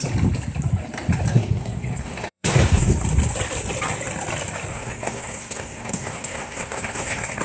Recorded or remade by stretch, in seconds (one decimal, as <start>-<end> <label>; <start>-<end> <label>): 0.0-1.3 recorded; 1.3-2.9 remade; 2.9-4.7 recorded; 4.7-7.4 remade